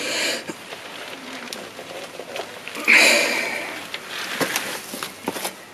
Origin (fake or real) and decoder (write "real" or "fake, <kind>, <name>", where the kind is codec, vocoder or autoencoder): real